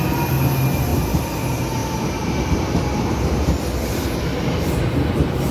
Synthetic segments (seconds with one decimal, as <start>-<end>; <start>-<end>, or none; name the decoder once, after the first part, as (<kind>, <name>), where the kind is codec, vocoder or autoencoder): none